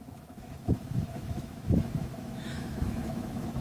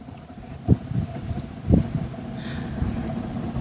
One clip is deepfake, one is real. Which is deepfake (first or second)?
first